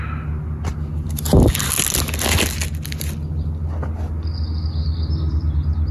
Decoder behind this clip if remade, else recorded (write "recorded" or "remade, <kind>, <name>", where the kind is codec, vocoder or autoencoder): recorded